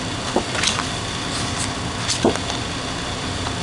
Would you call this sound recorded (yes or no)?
yes